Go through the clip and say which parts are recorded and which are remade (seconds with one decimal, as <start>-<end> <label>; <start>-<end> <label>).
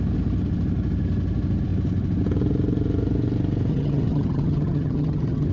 0.0-3.7 recorded; 3.7-5.5 remade